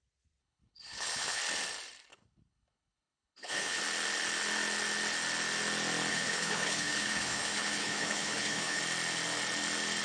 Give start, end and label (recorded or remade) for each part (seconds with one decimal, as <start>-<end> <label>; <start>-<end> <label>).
0.0-0.4 recorded; 0.4-1.4 remade; 1.4-2.1 recorded; 2.1-3.8 remade; 3.8-6.1 recorded; 6.1-8.8 remade; 8.8-10.0 recorded